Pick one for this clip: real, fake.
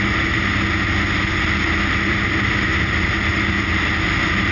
real